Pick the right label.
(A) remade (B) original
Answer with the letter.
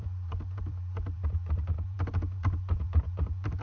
A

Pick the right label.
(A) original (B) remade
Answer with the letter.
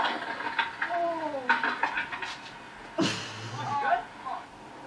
A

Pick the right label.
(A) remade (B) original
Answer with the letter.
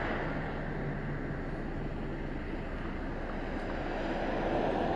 B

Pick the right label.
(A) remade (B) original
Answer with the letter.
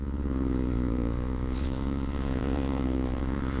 A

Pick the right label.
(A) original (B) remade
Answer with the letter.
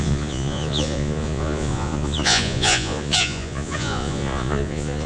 B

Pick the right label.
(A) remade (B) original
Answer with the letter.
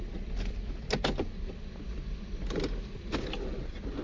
B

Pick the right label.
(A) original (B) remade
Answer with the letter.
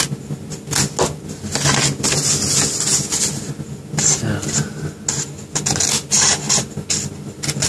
A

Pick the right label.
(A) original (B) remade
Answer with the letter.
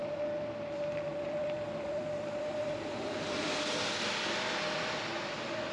B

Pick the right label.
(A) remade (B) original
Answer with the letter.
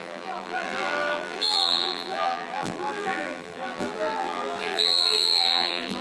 A